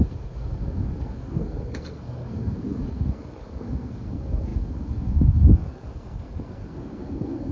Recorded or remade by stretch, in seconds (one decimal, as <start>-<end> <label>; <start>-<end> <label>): 0.0-7.5 remade